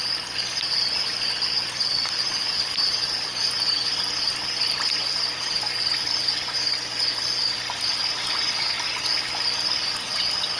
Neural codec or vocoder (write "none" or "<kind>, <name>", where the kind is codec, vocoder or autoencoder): none